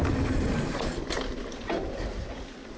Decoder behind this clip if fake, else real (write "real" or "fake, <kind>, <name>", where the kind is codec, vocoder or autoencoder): real